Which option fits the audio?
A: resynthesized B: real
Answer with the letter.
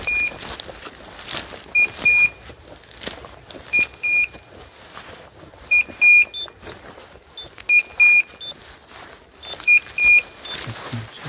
B